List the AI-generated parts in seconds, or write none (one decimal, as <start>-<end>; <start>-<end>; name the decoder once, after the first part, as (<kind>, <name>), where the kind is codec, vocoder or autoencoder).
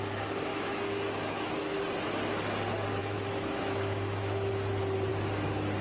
0.5-1.6 (autoencoder, DAC-VAE); 3.0-4.5